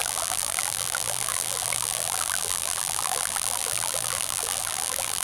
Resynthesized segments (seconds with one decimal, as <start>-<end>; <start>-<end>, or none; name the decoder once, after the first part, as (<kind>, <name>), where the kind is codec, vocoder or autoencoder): 0.0-5.2 (vocoder, BigVGAN v2)